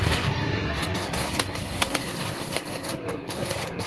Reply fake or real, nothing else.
fake